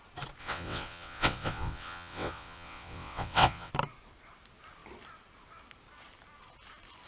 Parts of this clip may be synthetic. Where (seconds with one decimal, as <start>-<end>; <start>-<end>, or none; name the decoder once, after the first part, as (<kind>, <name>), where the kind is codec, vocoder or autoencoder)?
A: 0.4-3.7 (vocoder, WaveNeXt)

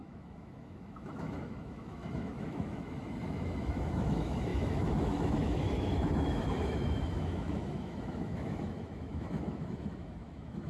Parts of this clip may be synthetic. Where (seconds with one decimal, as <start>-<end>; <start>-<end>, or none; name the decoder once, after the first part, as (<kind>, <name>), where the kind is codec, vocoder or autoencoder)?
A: 0.0-10.7 (autoencoder, DAC-VAE)

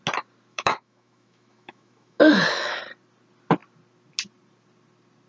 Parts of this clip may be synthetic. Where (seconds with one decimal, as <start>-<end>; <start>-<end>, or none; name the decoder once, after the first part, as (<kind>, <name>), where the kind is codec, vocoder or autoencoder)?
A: 0.5-2.8 (autoencoder, DAC-VAE)

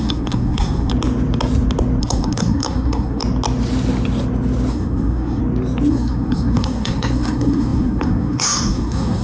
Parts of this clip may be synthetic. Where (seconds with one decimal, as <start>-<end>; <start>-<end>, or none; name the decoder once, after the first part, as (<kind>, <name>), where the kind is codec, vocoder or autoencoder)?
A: 0.0-0.9 (codec, SNAC); 2.0-3.2; 4.7-5.4; 5.9-9.2

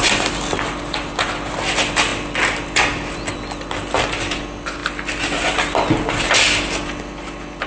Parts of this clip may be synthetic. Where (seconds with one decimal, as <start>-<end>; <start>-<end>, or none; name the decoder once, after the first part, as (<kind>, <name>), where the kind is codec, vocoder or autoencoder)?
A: none

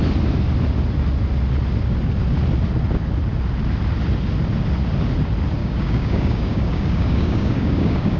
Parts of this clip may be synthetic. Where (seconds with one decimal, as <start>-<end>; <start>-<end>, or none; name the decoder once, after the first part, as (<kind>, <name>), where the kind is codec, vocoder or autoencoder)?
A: 5.6-8.2 (codec, DAC)

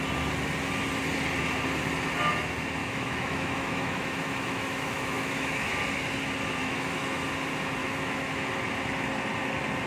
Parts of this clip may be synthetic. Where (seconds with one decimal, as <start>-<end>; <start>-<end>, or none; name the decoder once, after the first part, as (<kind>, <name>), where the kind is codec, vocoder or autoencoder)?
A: 2.8-5.7 (autoencoder, DAC-VAE); 6.6-7.3; 7.8-8.5

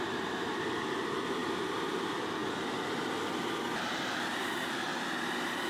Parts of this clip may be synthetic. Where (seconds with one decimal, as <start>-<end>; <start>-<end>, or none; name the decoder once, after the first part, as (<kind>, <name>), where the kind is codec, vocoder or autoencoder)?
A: 0.0-1.4 (vocoder, BigVGAN v2); 2.0-2.4; 4.0-4.9